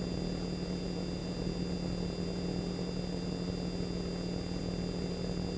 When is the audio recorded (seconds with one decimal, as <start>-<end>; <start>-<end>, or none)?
0.0-5.6